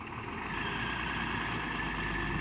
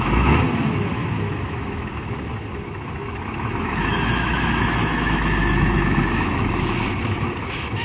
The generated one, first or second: second